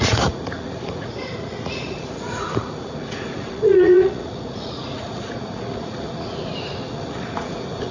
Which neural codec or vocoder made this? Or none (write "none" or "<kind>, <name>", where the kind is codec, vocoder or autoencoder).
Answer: vocoder, Vocos